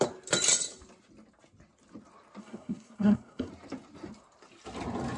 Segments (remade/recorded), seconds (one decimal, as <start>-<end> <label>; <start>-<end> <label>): 0.0-2.4 recorded; 2.4-3.5 remade; 3.5-5.2 recorded